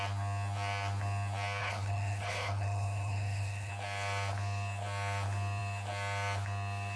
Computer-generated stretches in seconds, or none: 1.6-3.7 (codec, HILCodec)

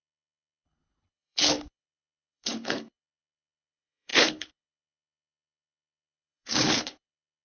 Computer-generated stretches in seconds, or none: 0.0-7.4 (codec, HILCodec)